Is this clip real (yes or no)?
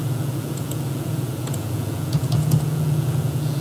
no